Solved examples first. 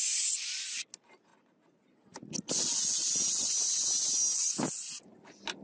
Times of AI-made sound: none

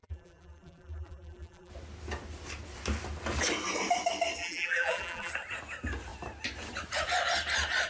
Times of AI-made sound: 0.0-1.7; 4.4-5.3

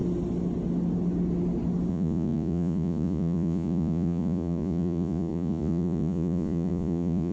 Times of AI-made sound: 1.9-7.3